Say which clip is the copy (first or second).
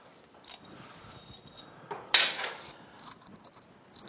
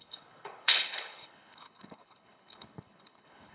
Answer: second